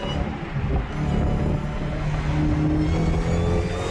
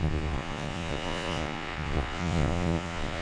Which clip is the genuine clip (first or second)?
first